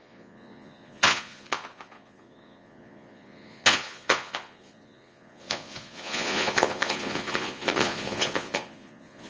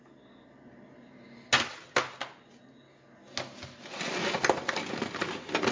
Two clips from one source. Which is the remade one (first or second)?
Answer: first